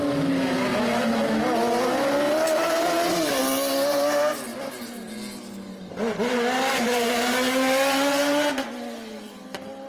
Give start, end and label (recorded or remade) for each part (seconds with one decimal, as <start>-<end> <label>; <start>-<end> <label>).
0.0-9.9 recorded